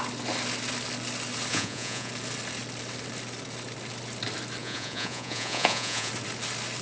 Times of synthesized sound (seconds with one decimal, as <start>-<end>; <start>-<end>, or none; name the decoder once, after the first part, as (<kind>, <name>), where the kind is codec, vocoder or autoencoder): 1.5-2.1 (vocoder, Vocos); 4.6-6.1